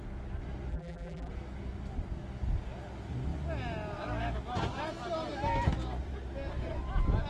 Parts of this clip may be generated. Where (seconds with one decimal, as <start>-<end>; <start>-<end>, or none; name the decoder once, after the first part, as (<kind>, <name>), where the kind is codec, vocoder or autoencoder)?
0.7-1.3 (vocoder, BigVGAN v2)